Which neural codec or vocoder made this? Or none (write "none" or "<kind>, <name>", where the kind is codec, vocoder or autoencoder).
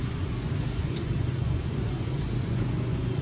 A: vocoder, Vocos